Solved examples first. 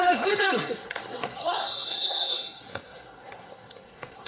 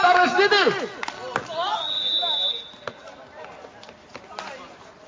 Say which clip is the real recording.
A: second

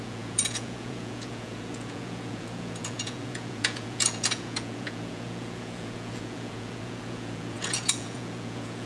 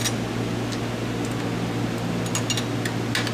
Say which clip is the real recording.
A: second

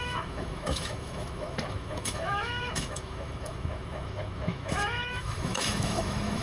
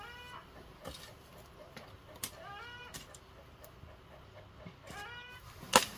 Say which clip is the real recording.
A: second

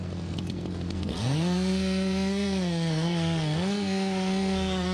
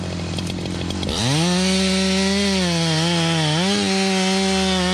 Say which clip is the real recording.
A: second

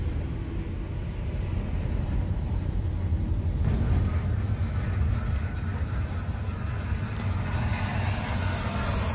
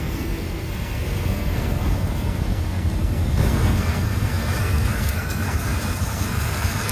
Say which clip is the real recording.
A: first